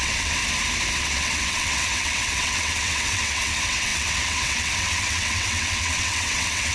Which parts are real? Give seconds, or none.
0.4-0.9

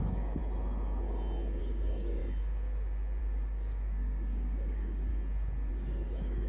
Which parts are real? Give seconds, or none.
0.4-1.6; 2.2-3.2; 5.1-5.7

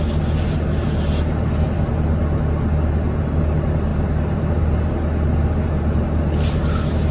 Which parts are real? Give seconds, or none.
0.0-7.1

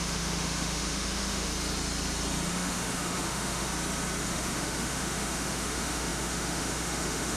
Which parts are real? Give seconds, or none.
1.5-2.5; 3.7-4.2

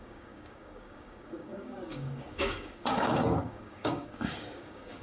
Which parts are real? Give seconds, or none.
none

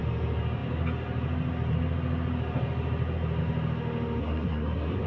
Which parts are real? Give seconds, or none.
0.0-4.2

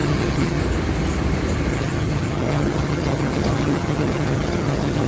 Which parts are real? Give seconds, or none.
0.6-1.7